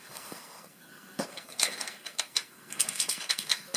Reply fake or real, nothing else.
fake